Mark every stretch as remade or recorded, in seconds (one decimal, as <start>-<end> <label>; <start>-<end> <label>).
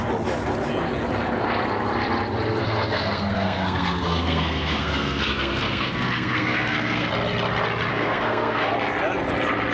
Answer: 0.0-2.6 recorded; 2.6-7.1 remade; 7.1-7.9 recorded; 7.9-8.7 remade; 8.7-9.7 recorded